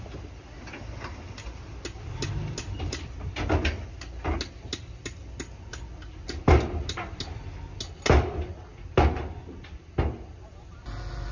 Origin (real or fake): real